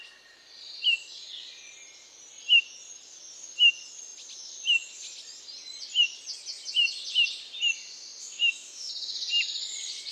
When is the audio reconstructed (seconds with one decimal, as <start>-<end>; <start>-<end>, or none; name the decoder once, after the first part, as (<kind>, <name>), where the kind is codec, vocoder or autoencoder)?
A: 8.2-8.9 (autoencoder, DAC-VAE)